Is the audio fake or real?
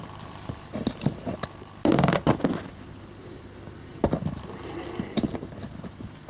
real